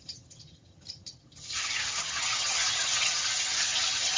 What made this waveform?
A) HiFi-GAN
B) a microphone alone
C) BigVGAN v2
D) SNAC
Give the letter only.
A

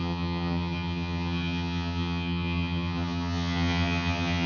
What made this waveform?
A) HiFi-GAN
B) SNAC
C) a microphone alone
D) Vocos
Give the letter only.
A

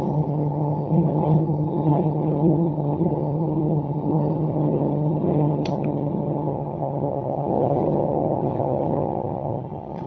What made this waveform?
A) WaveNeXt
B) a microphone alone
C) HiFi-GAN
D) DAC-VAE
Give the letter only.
C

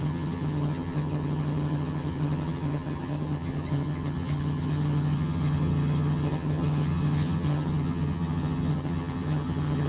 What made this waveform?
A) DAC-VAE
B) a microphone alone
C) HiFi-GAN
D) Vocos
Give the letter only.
C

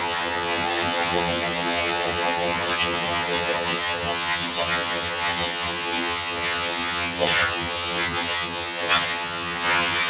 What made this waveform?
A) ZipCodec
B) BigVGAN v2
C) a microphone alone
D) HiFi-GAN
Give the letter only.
D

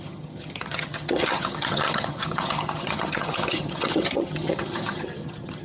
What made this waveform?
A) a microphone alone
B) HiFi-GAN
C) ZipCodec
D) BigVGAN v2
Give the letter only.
B